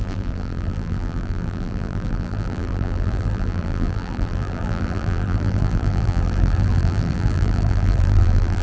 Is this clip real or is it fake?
fake